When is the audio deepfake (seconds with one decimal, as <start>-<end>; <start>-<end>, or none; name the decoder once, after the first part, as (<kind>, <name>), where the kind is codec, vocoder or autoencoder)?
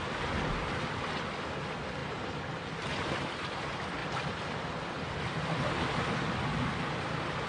2.0-2.6 (vocoder, BigVGAN v2)